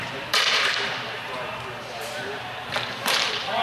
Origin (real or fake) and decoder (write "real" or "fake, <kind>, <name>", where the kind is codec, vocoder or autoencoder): fake, vocoder, BigVGAN v2